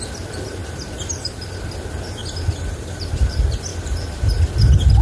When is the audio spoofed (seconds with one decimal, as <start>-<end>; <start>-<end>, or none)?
0.6-1.7; 2.2-3.1; 3.7-4.4